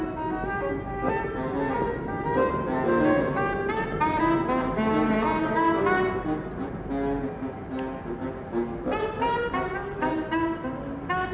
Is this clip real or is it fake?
real